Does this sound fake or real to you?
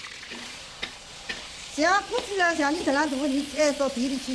fake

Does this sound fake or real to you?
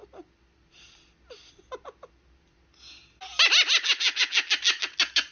real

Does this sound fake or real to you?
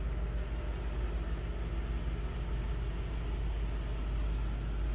real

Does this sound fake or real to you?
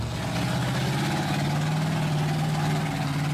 real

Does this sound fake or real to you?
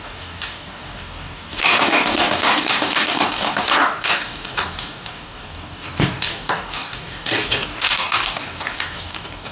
fake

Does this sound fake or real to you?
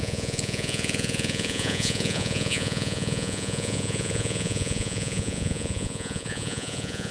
fake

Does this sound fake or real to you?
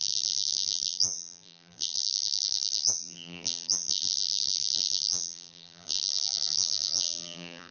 fake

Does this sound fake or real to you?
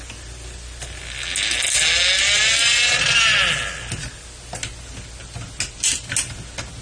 real